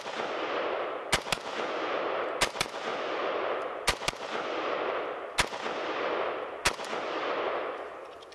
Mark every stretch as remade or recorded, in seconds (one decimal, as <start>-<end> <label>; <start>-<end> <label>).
0.0-8.3 recorded